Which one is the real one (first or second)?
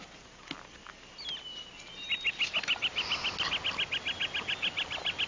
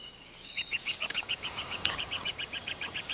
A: first